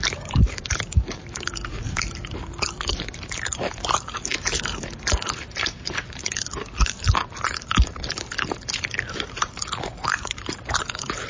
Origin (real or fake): fake